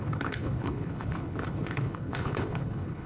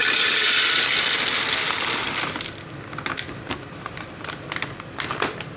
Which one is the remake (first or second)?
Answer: first